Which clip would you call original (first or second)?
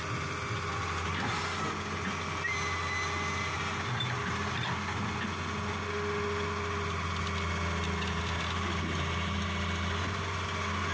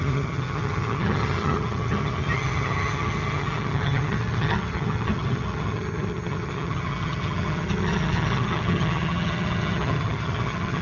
first